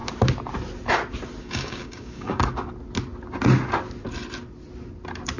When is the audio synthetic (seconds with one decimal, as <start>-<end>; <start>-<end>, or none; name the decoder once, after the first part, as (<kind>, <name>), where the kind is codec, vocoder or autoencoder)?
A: 1.4-2.4 (codec, DAC)